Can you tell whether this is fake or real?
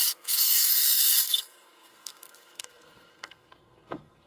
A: fake